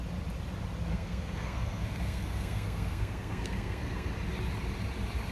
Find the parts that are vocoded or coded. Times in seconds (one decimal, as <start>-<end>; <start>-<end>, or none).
0.9-4.1